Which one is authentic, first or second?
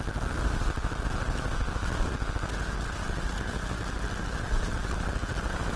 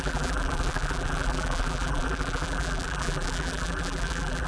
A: first